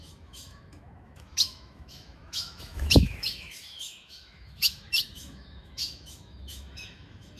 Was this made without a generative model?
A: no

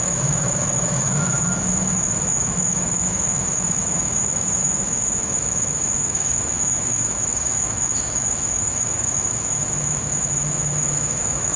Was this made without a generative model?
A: no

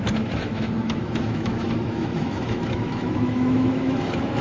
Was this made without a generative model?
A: no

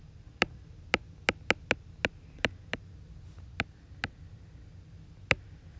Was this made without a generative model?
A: yes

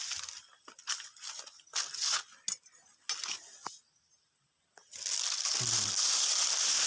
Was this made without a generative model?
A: yes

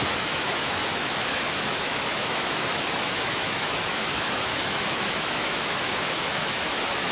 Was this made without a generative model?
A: no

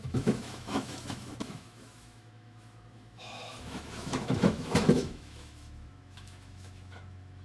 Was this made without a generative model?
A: no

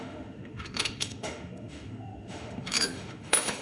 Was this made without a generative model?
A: no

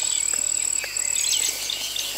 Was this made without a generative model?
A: yes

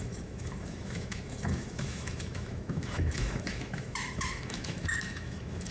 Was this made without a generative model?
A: no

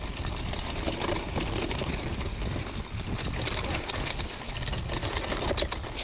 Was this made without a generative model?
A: yes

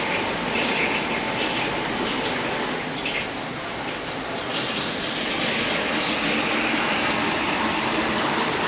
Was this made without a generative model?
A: yes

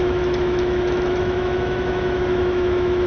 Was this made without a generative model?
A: no